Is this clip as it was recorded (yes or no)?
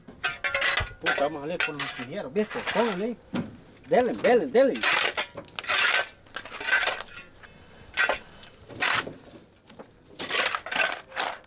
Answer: yes